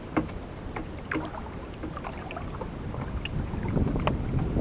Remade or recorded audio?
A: recorded